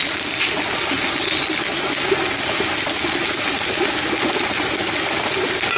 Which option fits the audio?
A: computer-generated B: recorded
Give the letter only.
B